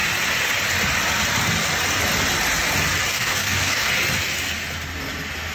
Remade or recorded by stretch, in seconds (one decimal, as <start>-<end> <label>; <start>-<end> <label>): 0.0-3.1 recorded; 3.1-3.9 remade; 3.9-5.5 recorded